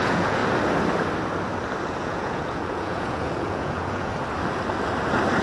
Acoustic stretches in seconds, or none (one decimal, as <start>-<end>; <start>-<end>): 0.4-2.0; 4.1-5.4